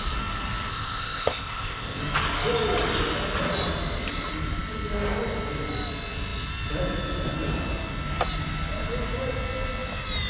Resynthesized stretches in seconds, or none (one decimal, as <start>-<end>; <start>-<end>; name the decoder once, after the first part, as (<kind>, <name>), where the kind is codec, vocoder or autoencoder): 0.7-2.0 (codec, ZipCodec)